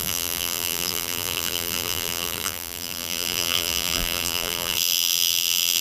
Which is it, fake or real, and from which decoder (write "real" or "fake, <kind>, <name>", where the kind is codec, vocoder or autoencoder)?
fake, vocoder, BigVGAN v2